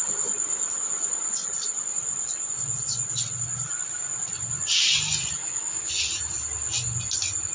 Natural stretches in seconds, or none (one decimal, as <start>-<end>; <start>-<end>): 0.0-5.4; 5.9-7.5